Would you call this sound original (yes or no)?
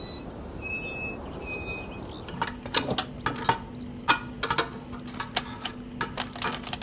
yes